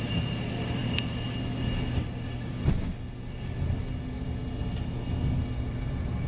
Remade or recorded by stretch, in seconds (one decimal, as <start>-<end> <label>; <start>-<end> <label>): 0.0-6.3 recorded